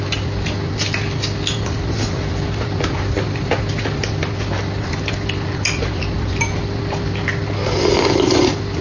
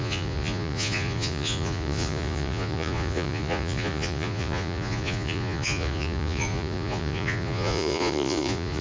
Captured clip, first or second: first